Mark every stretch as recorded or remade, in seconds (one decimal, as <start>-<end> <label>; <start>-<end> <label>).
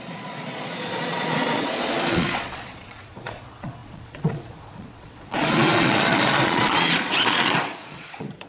0.0-8.5 remade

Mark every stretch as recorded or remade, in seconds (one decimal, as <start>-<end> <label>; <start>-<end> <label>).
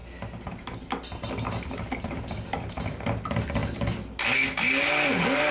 0.0-5.5 recorded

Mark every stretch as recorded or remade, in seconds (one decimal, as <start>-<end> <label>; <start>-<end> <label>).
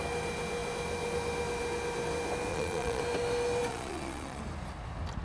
0.0-2.5 recorded; 2.5-3.0 remade; 3.0-3.7 recorded; 3.7-4.4 remade; 4.4-5.2 recorded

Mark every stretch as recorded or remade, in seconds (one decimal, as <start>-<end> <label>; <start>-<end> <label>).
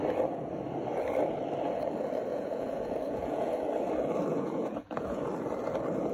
0.0-2.3 recorded; 2.3-3.6 remade; 3.6-4.3 recorded; 4.3-5.3 remade; 5.3-6.1 recorded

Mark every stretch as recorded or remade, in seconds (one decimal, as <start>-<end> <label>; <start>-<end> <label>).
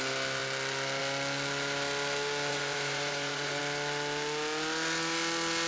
0.0-2.5 recorded; 2.5-3.6 remade; 3.6-5.7 recorded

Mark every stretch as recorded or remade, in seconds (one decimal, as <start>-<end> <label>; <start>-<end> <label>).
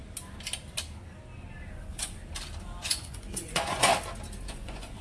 0.0-1.8 recorded; 1.8-2.2 remade; 2.2-2.8 recorded; 2.8-3.9 remade; 3.9-4.5 recorded; 4.5-5.0 remade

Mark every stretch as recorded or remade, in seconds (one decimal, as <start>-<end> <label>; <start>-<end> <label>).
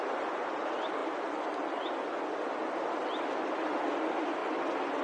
0.0-5.0 recorded